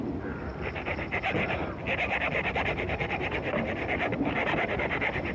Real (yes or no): yes